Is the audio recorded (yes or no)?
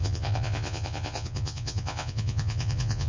no